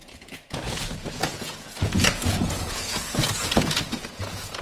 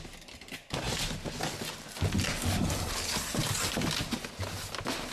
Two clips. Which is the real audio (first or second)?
second